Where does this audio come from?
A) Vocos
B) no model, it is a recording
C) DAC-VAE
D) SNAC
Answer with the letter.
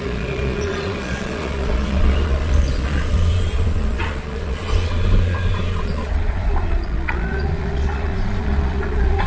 A